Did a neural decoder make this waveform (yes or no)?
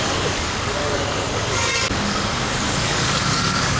yes